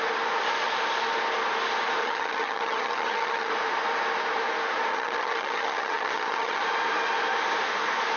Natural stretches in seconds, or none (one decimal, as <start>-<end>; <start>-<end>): 0.0-2.0; 3.5-4.9; 6.6-8.2